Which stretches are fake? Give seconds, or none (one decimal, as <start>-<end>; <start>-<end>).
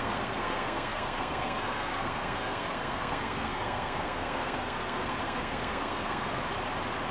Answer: 0.0-6.4